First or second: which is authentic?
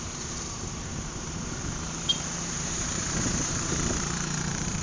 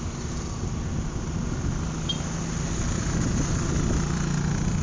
second